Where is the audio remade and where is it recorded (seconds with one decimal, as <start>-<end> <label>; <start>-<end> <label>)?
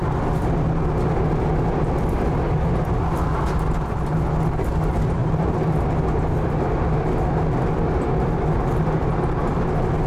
0.0-5.2 recorded; 5.2-6.0 remade; 6.0-10.1 recorded